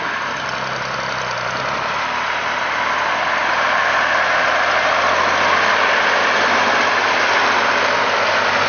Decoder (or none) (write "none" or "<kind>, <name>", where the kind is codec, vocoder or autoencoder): none